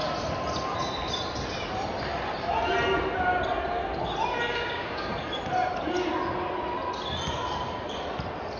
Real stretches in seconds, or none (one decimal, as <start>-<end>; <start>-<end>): 0.0-4.5; 5.1-8.6